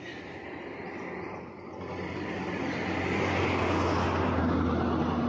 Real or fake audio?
real